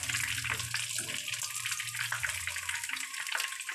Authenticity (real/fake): real